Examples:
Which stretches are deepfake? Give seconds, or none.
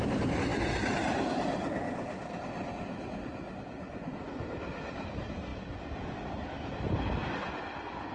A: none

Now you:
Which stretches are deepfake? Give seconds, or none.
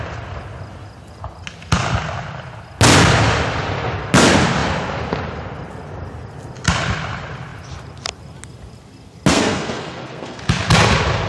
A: 9.3-10.4 (codec, SNAC)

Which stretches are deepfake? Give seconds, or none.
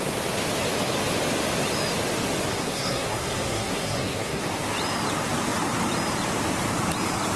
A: 2.5-4.4 (codec, SNAC)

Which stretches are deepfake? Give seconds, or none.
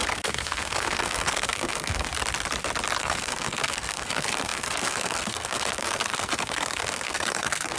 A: 0.0-2.1 (codec, SNAC); 3.0-7.8